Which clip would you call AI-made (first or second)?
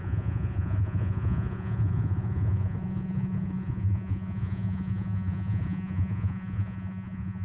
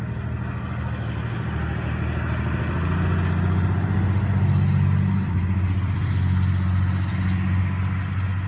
first